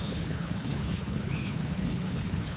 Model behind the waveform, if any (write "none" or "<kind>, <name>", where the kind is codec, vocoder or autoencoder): codec, HILCodec